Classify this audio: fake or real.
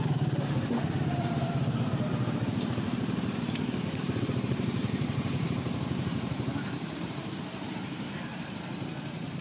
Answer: fake